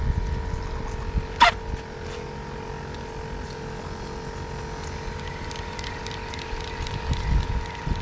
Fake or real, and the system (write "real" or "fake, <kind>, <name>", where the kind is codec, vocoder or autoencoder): real